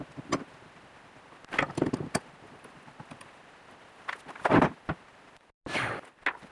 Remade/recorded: recorded